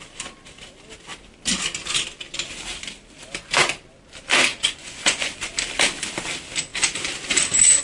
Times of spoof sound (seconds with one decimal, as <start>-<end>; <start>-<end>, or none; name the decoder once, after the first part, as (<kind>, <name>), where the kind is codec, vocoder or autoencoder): 4.5-5.4 (vocoder, Vocos)